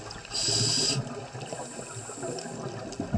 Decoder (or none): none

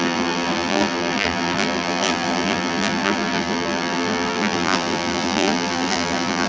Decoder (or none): vocoder, BigVGAN v2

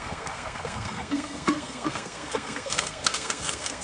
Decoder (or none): codec, SNAC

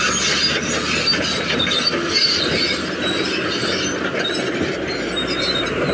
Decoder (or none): none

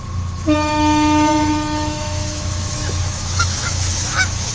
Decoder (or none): autoencoder, DAC-VAE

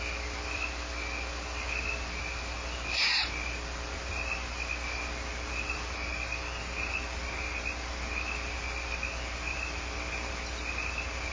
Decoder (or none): none